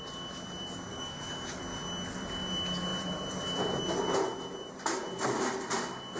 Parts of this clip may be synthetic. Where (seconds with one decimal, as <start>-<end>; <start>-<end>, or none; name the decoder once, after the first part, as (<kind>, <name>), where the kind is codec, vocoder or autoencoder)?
0.9-1.6 (codec, DAC)